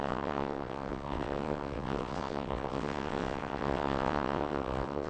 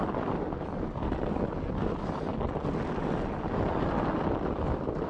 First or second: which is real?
second